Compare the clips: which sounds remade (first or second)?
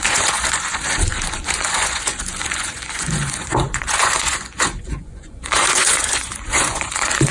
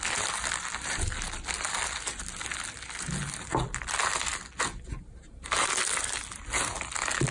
first